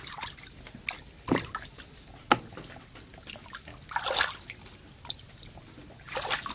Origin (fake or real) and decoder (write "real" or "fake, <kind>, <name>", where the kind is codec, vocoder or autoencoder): real